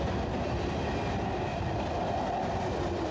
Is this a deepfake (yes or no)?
no